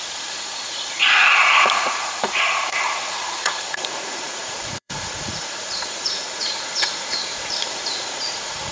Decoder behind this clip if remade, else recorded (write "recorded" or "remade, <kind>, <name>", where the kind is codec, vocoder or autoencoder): remade, vocoder, Vocos